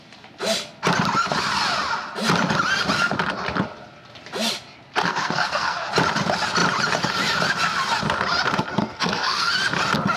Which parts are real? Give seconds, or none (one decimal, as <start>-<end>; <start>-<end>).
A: 0.0-5.0; 5.9-8.8; 9.5-10.2